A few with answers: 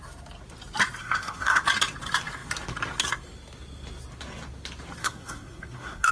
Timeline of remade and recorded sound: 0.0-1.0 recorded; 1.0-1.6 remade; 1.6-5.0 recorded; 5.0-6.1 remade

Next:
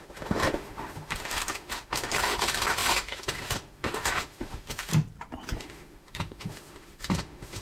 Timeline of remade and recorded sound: 0.0-4.9 remade; 4.9-5.6 recorded; 5.6-7.6 remade